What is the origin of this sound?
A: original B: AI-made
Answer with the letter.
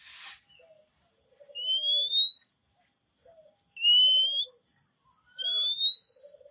A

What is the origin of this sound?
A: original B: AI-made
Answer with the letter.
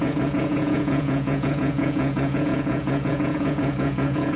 B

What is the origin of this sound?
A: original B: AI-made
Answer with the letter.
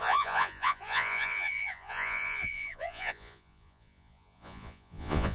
B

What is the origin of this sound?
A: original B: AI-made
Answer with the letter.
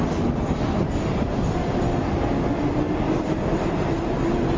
A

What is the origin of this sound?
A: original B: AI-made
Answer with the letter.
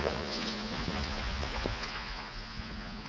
B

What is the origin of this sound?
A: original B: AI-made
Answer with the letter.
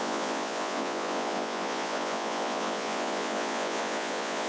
B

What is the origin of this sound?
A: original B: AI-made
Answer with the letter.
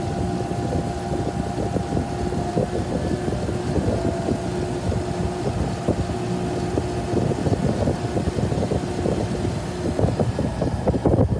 A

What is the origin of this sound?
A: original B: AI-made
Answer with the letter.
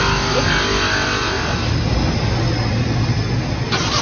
A